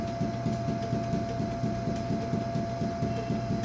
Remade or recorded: recorded